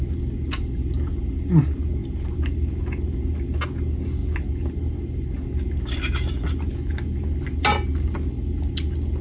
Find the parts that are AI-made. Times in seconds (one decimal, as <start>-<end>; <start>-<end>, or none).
none